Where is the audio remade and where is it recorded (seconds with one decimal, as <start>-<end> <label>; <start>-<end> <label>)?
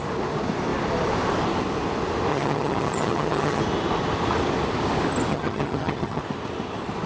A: 0.0-2.3 recorded; 2.3-3.6 remade; 3.6-5.3 recorded; 5.3-6.2 remade; 6.2-7.1 recorded